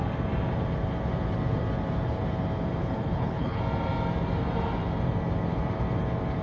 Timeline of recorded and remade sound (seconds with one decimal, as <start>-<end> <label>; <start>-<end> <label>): 0.0-2.8 recorded; 2.8-3.6 remade; 3.6-6.4 recorded